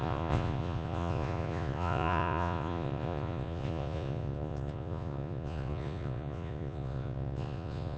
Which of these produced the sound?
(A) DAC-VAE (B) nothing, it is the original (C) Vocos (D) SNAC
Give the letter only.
C